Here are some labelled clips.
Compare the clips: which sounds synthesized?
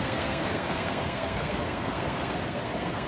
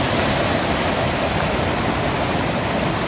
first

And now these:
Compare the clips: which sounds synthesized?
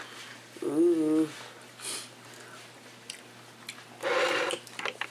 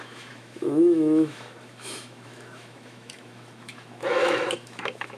second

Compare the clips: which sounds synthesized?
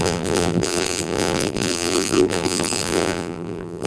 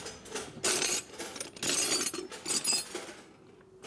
first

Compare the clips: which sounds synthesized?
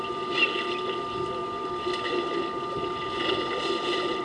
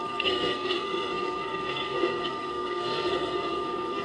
second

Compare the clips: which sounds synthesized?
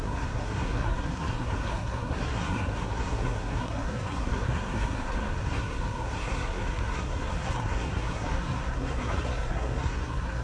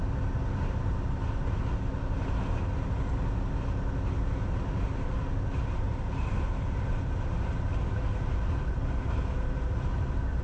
first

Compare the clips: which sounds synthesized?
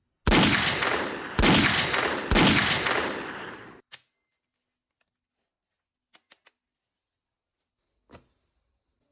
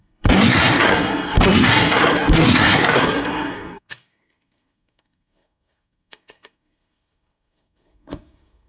second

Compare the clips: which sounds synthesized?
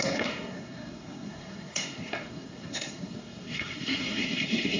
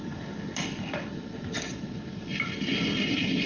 first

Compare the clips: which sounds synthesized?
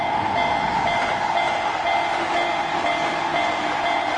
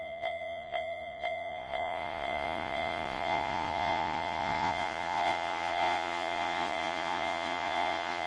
second